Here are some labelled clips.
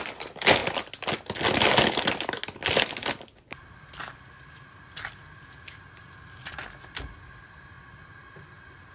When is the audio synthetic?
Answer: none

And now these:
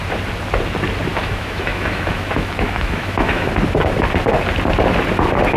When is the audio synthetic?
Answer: 1.1-3.5

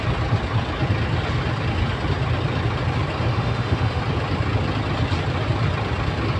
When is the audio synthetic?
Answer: 3.3-4.0

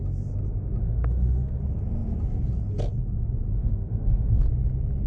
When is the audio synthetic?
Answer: 0.8-1.6; 3.6-4.4

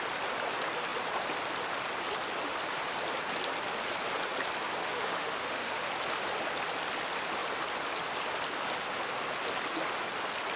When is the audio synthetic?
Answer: 4.8-5.9